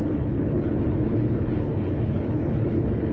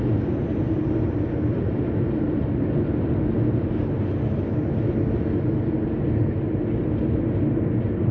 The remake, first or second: first